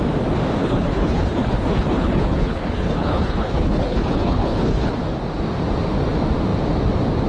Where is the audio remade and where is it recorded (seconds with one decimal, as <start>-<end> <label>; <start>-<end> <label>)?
0.0-0.6 recorded; 0.6-5.0 remade; 5.0-7.3 recorded